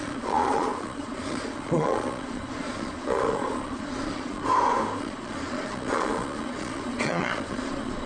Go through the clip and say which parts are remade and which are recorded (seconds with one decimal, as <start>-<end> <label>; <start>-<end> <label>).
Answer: 0.0-4.5 remade; 4.5-5.0 recorded; 5.0-8.1 remade